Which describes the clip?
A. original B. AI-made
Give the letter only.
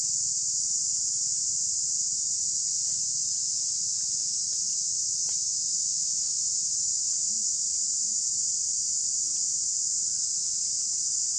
A